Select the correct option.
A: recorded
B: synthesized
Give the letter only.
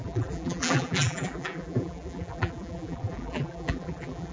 B